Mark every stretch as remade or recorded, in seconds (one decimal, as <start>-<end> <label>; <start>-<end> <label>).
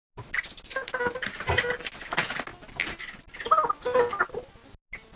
0.0-5.2 recorded